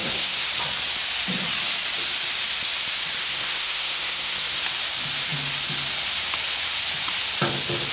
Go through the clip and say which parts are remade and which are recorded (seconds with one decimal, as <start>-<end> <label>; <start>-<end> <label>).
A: 0.0-0.5 remade; 0.5-3.2 recorded; 3.2-4.6 remade; 4.6-7.9 recorded